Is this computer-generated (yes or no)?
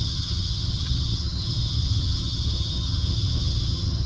yes